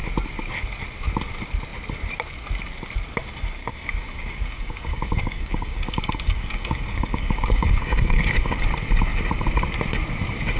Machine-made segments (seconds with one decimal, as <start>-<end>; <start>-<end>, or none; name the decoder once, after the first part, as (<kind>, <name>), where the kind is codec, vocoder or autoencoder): 3.6-8.6 (codec, DAC)